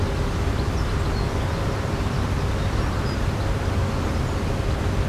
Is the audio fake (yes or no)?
no